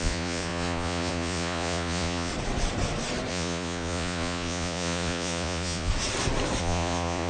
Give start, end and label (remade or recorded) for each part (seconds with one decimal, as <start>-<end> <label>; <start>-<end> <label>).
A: 0.0-2.3 remade; 2.3-3.3 recorded; 3.3-5.9 remade; 5.9-6.6 recorded; 6.6-7.3 remade